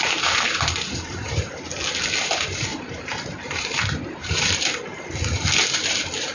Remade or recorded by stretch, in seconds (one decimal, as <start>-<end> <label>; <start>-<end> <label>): 0.0-1.7 remade; 1.7-2.2 recorded; 2.2-6.3 remade